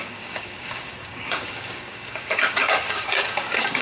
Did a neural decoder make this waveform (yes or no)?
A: yes